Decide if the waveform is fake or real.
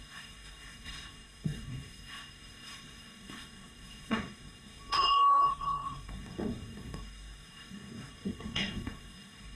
fake